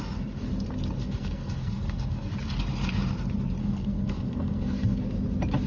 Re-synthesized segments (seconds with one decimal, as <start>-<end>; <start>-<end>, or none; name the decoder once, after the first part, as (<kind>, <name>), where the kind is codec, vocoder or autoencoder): 1.0-2.3 (codec, SNAC); 3.6-5.0